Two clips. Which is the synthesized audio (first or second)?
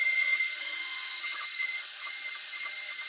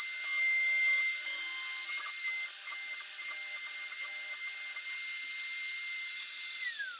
first